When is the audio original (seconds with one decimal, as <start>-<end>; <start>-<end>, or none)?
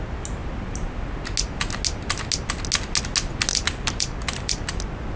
0.0-3.5; 4.7-5.2